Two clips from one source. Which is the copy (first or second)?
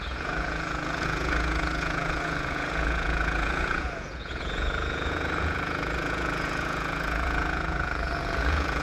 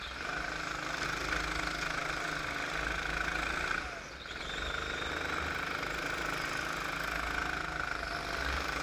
first